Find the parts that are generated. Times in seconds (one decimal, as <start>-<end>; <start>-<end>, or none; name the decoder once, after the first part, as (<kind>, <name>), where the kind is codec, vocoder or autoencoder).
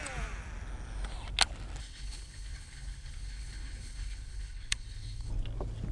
1.8-5.3 (codec, HILCodec)